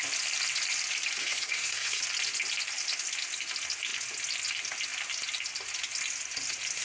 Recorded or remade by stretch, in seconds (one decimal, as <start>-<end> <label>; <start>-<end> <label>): 0.0-1.2 recorded; 1.2-2.0 remade; 2.0-6.8 recorded